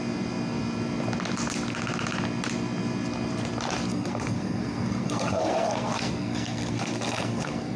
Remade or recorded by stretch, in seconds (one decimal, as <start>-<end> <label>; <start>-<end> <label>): 0.0-3.9 recorded; 3.9-7.8 remade